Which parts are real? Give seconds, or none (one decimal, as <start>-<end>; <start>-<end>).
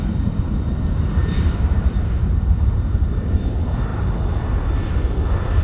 0.6-1.2; 3.1-5.6